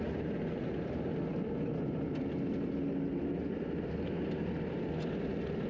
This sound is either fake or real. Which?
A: real